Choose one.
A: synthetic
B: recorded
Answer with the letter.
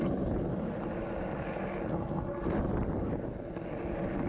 B